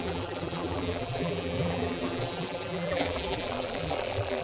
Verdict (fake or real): fake